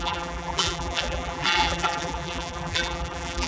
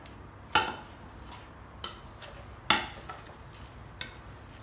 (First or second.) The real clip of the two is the second